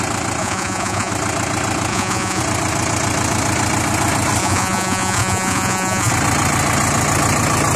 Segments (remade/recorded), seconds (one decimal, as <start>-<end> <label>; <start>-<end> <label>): 0.0-0.4 recorded; 0.4-1.1 remade; 1.1-1.9 recorded; 1.9-2.4 remade; 2.4-4.4 recorded; 4.4-6.1 remade; 6.1-7.8 recorded